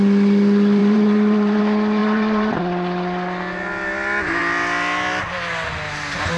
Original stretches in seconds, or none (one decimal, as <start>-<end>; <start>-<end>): 0.0-0.8; 1.6-2.0; 2.6-6.4